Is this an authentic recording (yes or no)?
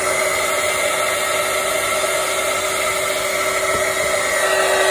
yes